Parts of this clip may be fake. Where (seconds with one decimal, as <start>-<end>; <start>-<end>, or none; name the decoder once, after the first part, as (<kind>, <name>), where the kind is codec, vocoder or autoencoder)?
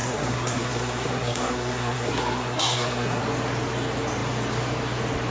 0.0-3.2 (codec, SNAC)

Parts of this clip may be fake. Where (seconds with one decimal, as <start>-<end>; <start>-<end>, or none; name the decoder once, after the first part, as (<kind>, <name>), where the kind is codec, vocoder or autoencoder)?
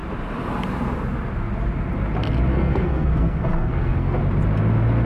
2.5-4.2 (codec, SNAC)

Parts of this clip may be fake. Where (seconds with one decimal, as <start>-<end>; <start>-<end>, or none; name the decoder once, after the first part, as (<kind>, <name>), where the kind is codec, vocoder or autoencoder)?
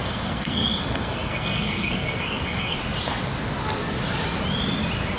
0.0-2.8 (codec, SNAC)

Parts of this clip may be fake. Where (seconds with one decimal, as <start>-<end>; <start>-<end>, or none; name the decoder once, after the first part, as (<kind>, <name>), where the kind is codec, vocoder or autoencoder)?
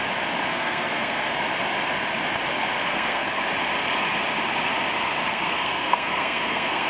0.5-1.3 (codec, SNAC); 2.8-3.4; 5.3-6.9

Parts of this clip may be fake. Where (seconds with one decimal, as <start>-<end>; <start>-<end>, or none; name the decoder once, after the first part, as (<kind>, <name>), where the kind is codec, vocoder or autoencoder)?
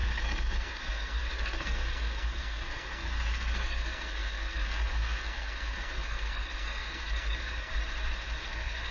0.0-7.7 (codec, SNAC); 8.4-8.9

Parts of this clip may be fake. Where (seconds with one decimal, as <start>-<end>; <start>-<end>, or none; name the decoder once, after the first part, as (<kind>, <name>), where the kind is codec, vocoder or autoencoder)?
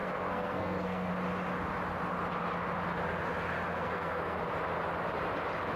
0.0-1.1 (codec, SNAC); 3.7-4.4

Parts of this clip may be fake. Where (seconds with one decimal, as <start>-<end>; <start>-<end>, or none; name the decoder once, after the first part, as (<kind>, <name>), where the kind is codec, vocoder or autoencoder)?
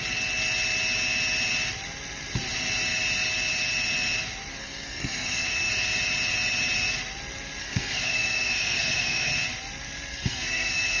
4.5-5.7 (codec, SNAC); 7.6-9.3; 10.1-11.0